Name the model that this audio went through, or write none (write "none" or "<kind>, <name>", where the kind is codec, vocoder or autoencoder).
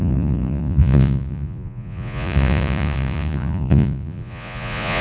vocoder, Vocos